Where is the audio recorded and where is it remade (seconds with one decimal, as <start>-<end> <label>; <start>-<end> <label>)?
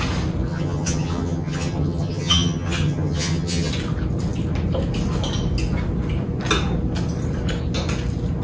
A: 0.0-0.5 recorded; 0.5-3.7 remade; 3.7-8.4 recorded